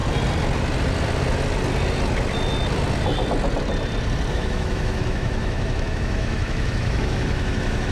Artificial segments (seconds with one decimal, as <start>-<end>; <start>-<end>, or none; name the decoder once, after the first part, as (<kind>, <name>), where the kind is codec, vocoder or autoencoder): 4.3-7.9 (autoencoder, DAC-VAE)